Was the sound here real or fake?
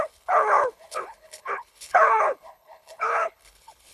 fake